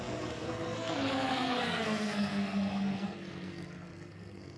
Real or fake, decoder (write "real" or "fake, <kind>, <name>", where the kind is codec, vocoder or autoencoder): fake, codec, SNAC